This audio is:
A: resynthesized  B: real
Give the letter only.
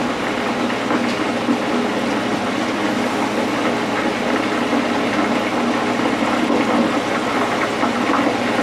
B